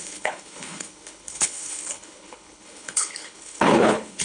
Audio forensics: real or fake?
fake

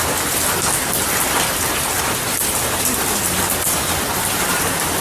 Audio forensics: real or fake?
real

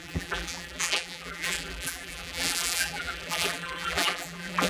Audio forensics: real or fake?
fake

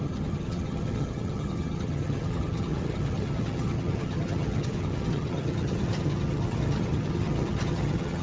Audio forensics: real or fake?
fake